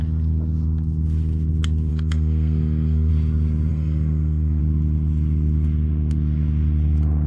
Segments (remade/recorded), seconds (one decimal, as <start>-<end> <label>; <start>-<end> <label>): 0.0-1.9 recorded; 1.9-3.1 remade; 3.1-3.7 recorded; 3.7-4.6 remade; 4.6-7.3 recorded